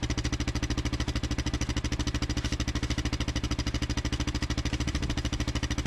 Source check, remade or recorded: recorded